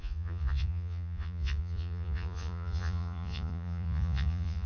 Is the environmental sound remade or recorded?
remade